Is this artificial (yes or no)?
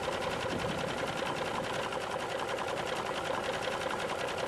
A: no